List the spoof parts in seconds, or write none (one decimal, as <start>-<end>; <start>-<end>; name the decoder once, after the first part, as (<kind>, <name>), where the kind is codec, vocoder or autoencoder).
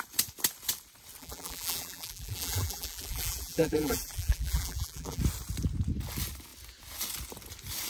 1.2-5.2 (vocoder, BigVGAN v2)